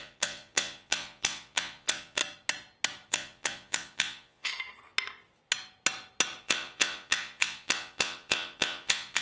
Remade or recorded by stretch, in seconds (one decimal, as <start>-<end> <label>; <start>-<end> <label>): 0.0-2.2 remade; 2.2-3.1 recorded; 3.1-4.5 remade; 4.5-6.4 recorded; 6.4-9.2 remade